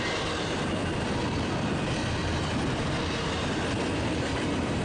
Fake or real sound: real